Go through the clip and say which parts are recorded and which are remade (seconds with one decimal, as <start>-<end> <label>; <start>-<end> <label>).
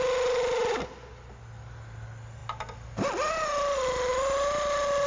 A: 0.0-5.1 recorded